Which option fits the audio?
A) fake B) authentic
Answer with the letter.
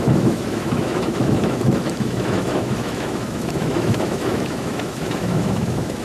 A